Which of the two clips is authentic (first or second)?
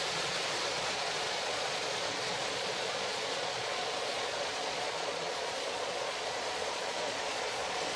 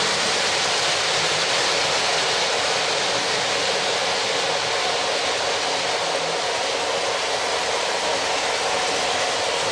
second